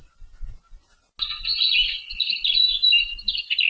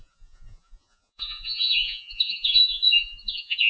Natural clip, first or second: first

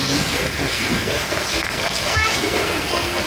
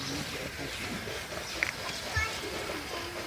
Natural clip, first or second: second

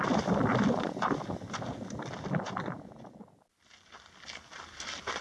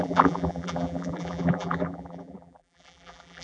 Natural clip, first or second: first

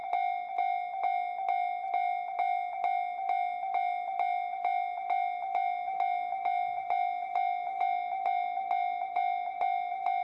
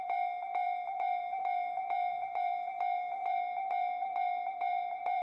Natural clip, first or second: first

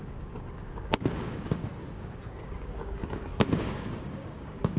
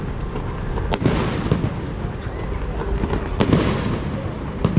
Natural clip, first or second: second